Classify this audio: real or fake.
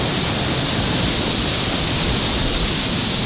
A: real